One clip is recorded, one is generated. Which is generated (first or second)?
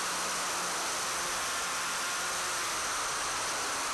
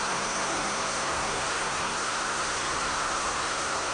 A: second